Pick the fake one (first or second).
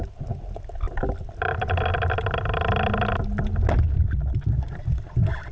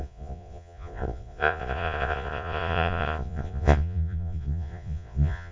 second